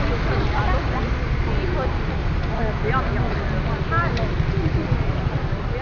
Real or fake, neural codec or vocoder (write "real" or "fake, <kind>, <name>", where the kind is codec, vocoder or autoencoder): real